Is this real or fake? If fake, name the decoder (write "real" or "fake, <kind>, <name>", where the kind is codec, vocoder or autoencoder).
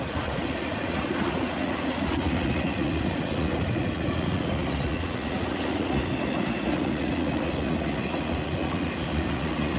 fake, vocoder, Vocos